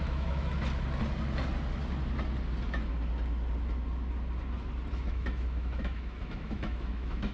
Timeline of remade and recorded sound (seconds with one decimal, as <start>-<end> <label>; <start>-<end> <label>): 0.0-0.5 remade; 0.5-4.9 recorded; 4.9-7.3 remade